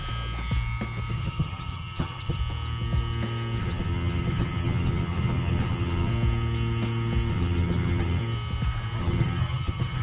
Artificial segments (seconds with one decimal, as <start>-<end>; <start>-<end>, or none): 1.1-2.4; 3.6-6.1; 7.3-8.2; 9.0-10.0